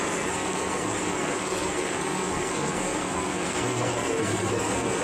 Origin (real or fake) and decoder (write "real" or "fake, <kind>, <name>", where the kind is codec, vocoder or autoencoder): fake, codec, SNAC